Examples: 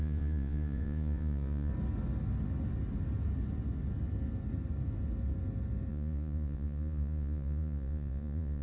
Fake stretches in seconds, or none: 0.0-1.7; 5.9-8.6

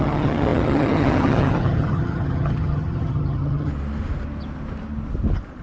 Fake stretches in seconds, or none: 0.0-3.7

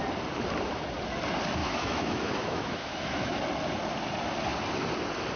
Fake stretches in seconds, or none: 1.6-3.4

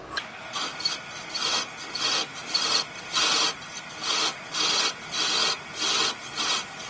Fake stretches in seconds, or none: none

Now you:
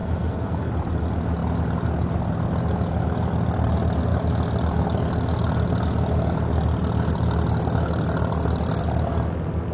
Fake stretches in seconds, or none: 0.0-0.7